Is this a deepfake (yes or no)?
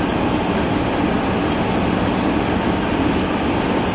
no